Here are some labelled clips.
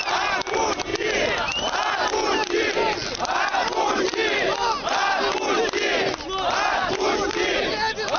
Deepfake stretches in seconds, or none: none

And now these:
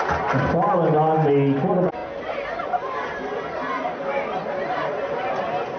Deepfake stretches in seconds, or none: none

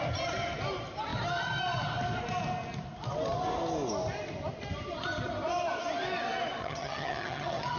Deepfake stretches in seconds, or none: 6.6-7.8 (vocoder, HiFi-GAN)

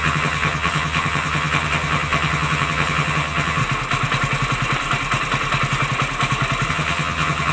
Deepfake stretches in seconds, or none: 0.0-3.6 (vocoder, HiFi-GAN); 6.7-7.5